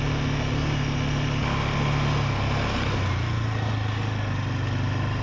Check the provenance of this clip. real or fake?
real